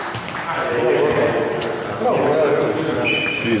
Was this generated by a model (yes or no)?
no